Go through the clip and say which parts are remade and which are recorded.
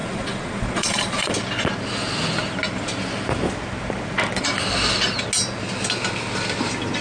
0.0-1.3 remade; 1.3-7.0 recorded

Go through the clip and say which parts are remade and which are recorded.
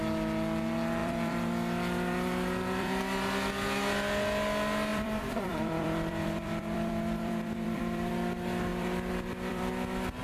0.0-1.0 recorded; 1.0-3.0 remade; 3.0-4.9 recorded; 4.9-8.1 remade; 8.1-8.7 recorded; 8.7-9.7 remade; 9.7-10.2 recorded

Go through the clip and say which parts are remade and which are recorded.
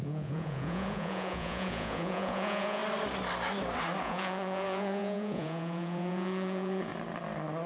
0.0-2.8 remade; 2.8-4.0 recorded; 4.0-6.9 remade; 6.9-7.7 recorded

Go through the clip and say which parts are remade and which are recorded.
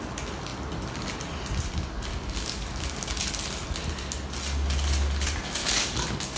0.0-2.1 recorded; 2.1-3.3 remade; 3.3-5.6 recorded; 5.6-6.4 remade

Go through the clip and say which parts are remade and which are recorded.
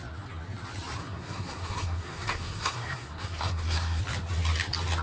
0.0-1.0 recorded; 1.0-4.0 remade; 4.0-5.0 recorded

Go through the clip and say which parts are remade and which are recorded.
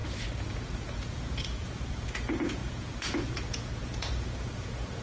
0.0-5.0 remade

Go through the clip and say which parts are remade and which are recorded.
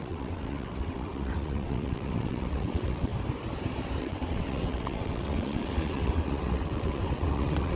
0.0-3.1 remade; 3.1-4.0 recorded; 4.0-7.8 remade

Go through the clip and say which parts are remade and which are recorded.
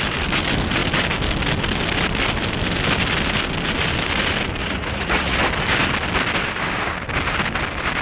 0.0-4.6 recorded; 4.6-5.4 remade; 5.4-8.0 recorded